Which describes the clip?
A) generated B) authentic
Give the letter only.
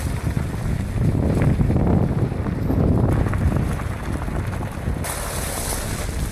B